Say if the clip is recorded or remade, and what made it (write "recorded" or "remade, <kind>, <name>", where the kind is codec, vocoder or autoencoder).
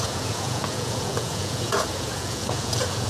remade, vocoder, Vocos